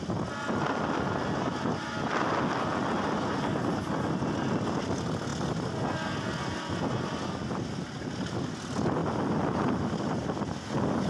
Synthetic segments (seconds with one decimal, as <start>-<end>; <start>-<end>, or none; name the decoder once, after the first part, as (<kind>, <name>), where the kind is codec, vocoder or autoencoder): none